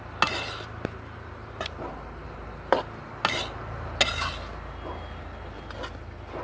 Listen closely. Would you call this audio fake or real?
real